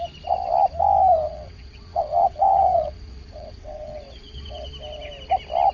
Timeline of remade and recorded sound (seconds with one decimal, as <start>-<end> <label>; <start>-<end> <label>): 0.0-1.3 recorded; 1.3-4.7 remade; 4.7-5.7 recorded